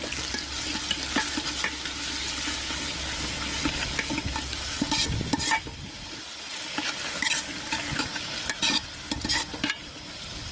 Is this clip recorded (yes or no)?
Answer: yes